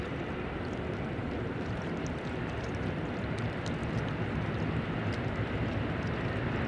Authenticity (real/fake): fake